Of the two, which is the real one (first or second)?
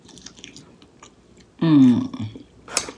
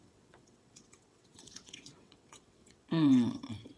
first